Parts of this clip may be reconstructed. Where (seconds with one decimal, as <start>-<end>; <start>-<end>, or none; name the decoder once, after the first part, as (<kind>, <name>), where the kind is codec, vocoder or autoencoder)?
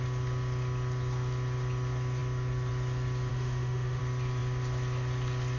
3.3-4.0 (autoencoder, DAC-VAE)